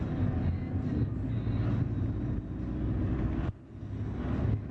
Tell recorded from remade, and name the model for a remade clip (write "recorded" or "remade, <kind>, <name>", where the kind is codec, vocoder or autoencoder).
recorded